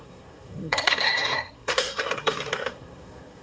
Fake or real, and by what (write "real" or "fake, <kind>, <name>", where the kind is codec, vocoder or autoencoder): fake, codec, SNAC